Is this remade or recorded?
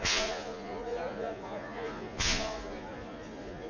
remade